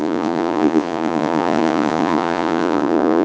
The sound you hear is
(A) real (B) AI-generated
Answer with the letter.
B